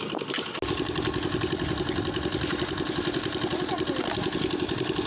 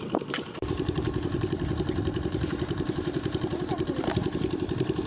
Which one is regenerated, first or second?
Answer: second